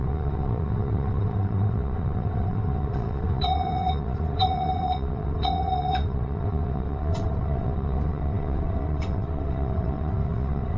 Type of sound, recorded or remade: remade